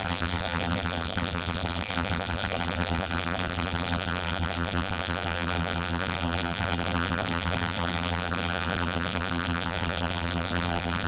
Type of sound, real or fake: fake